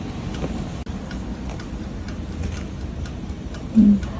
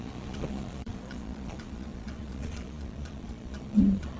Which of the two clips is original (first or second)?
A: first